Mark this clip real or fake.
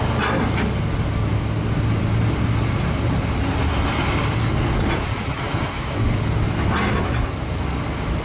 real